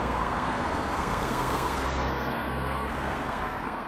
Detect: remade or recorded remade